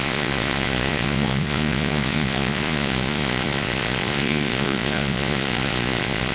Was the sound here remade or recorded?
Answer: remade